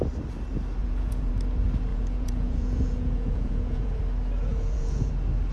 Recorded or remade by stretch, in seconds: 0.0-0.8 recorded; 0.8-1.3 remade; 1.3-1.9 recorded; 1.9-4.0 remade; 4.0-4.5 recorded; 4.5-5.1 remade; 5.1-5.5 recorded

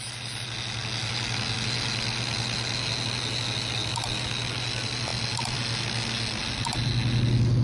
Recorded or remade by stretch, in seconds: 0.0-7.6 recorded

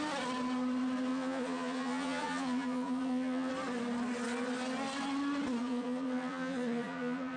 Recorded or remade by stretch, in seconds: 0.0-1.1 recorded; 1.1-3.5 remade; 3.5-5.6 recorded; 5.6-7.4 remade

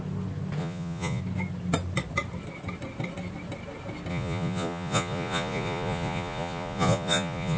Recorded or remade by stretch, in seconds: 0.0-0.6 recorded; 0.6-1.2 remade; 1.2-4.1 recorded; 4.1-7.6 remade

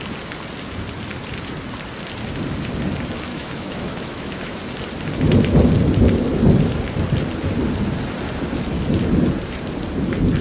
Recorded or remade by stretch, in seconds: 0.0-3.3 recorded; 3.3-4.6 remade; 4.6-10.4 recorded

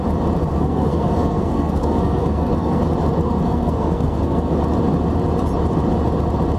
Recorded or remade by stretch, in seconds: 0.0-0.5 recorded; 0.5-2.8 remade; 2.8-3.2 recorded; 3.2-4.6 remade; 4.6-6.6 recorded

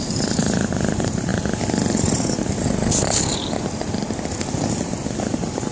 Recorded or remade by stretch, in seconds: 0.0-1.3 remade; 1.3-4.7 recorded; 4.7-5.7 remade